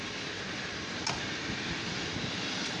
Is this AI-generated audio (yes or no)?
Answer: yes